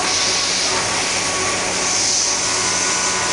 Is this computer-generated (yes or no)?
no